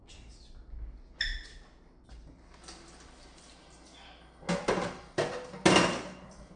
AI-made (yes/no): no